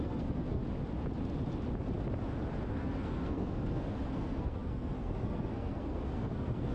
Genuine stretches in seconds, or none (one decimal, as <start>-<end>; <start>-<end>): 0.6-2.8